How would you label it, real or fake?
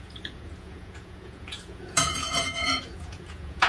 fake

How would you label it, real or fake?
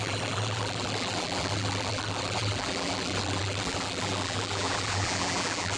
fake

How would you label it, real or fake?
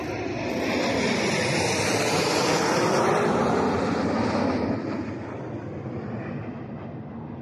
real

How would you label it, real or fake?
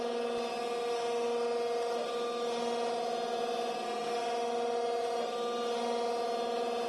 real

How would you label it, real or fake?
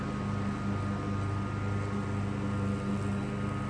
real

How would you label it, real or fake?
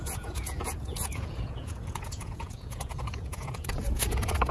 fake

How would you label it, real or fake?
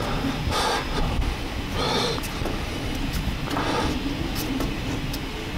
real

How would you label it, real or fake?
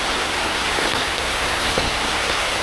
fake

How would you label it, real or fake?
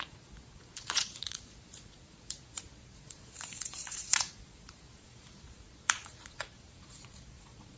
fake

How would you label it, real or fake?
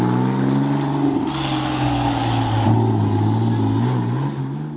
real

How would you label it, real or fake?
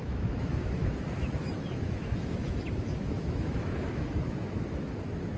fake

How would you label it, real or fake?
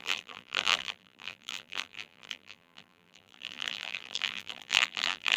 fake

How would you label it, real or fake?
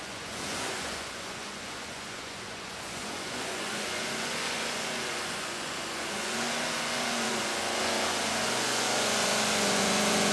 fake